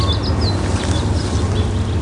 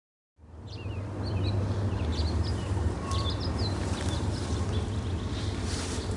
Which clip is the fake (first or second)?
second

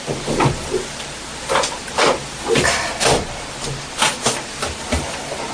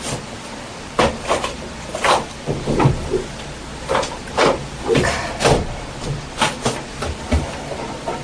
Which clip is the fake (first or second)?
second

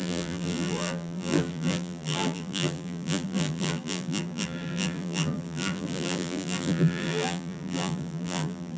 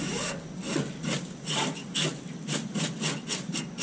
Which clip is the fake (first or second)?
first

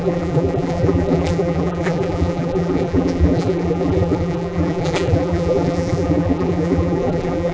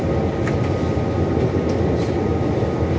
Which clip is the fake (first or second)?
first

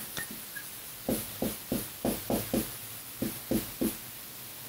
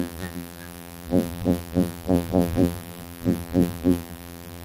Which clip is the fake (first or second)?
second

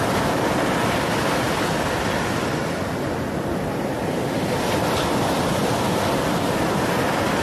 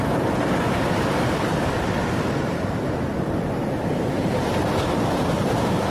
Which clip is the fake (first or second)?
second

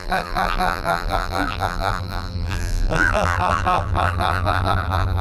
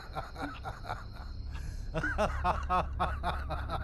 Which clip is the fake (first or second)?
first